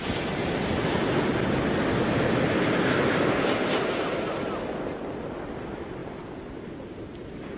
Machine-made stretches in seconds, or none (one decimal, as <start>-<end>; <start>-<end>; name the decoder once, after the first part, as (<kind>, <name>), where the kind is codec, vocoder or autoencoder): none